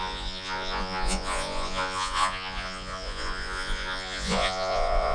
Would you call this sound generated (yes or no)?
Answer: yes